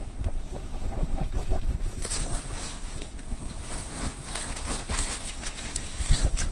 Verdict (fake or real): fake